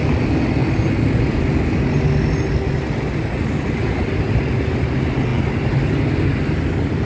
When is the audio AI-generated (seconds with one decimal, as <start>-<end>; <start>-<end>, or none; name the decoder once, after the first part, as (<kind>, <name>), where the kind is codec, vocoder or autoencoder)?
none